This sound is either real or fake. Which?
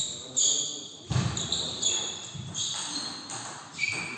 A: fake